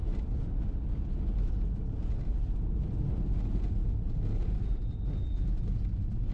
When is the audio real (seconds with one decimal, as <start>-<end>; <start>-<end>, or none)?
0.0-6.3